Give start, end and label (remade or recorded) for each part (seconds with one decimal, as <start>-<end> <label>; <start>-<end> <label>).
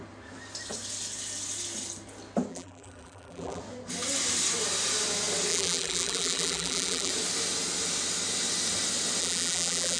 0.0-2.5 recorded; 2.5-3.6 remade; 3.6-5.5 recorded; 5.5-7.1 remade; 7.1-9.2 recorded; 9.2-10.0 remade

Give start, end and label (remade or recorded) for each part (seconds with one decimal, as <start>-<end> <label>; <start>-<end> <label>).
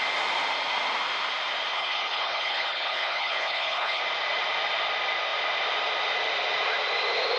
0.0-1.7 recorded; 1.7-4.0 remade; 4.0-7.4 recorded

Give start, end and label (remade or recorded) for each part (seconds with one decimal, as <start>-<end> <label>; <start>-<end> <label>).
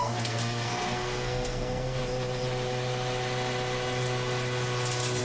0.0-2.0 remade; 2.0-5.2 recorded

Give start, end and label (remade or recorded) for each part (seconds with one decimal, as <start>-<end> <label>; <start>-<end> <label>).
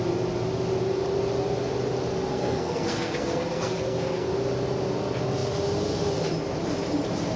0.0-2.3 recorded; 2.3-4.3 remade; 4.3-7.4 recorded